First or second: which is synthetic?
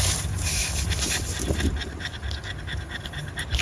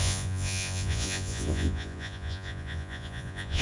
second